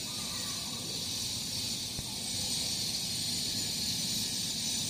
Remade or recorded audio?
recorded